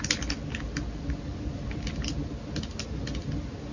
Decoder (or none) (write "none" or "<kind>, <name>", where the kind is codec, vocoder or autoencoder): none